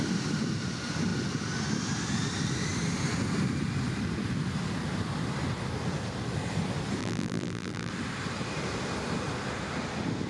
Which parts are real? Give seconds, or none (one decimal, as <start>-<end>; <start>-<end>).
0.0-7.0; 7.9-10.3